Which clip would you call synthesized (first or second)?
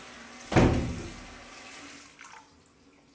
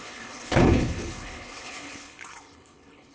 second